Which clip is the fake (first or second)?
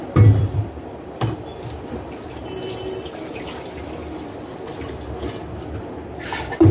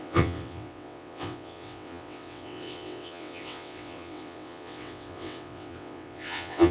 second